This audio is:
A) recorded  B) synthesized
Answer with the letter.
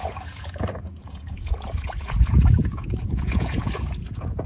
B